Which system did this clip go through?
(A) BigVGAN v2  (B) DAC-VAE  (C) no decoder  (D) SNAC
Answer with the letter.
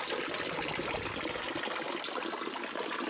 C